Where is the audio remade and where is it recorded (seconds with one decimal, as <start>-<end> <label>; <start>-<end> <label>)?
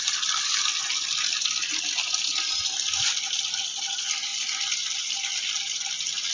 0.0-6.3 recorded